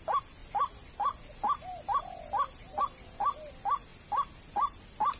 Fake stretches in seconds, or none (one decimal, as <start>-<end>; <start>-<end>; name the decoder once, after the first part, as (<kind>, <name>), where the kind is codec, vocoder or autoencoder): none